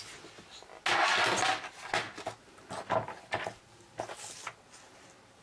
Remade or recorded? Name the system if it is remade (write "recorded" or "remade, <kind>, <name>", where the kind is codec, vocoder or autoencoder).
recorded